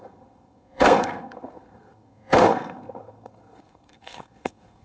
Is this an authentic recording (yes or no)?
no